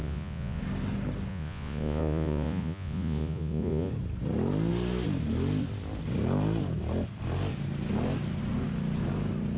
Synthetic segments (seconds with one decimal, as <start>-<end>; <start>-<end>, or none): 0.0-0.6; 1.3-3.9